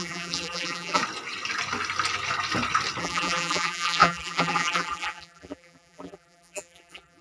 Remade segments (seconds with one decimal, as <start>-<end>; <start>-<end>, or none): 0.0-1.0; 3.0-7.2